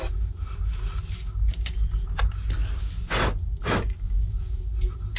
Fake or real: real